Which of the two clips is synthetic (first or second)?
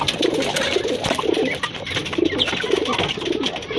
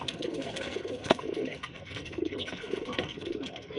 second